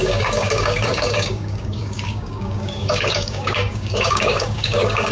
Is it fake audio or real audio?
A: fake